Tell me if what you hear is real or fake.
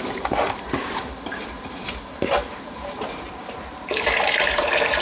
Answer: fake